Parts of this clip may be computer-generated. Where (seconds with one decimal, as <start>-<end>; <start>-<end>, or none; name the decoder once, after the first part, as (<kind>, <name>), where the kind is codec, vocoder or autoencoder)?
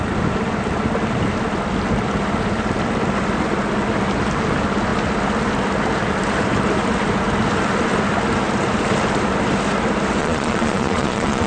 10.2-11.5 (vocoder, Vocos)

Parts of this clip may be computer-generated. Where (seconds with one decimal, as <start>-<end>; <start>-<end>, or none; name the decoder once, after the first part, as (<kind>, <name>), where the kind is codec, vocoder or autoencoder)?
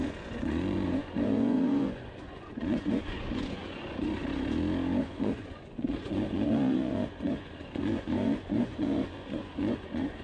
0.0-4.2 (vocoder, Vocos); 5.0-10.2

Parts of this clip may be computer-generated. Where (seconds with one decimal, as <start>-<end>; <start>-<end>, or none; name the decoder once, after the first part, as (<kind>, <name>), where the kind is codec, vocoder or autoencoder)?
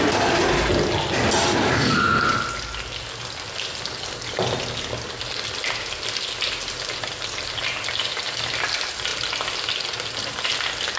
none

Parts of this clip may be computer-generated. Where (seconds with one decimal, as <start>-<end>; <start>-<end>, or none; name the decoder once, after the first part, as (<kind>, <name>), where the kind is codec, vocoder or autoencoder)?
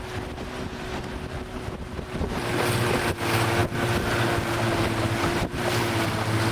none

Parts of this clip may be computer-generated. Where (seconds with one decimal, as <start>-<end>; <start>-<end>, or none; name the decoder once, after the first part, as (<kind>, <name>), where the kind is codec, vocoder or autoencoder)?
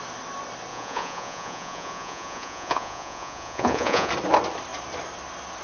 0.7-4.1 (vocoder, Vocos)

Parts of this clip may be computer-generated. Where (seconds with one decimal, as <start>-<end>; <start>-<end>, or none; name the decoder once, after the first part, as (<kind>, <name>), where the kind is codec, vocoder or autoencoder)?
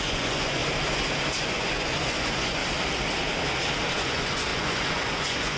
0.0-0.6 (vocoder, Vocos); 1.4-2.6; 3.9-5.6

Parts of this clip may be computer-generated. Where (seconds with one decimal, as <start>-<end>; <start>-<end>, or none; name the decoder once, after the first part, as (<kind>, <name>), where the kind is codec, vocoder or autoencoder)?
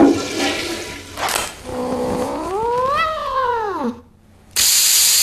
1.7-2.5 (vocoder, Vocos); 3.2-4.0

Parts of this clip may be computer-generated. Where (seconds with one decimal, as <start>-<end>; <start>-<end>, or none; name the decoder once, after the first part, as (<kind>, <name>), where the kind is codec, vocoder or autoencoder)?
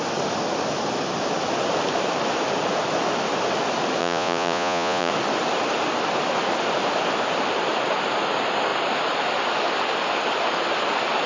4.0-5.1 (vocoder, Vocos)